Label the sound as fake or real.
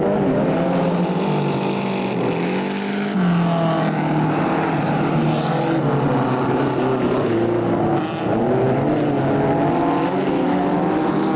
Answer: real